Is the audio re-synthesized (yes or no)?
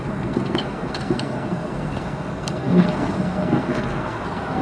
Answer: yes